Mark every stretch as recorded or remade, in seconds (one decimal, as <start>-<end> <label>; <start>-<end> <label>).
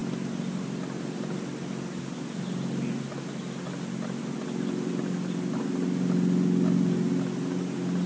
0.0-8.1 recorded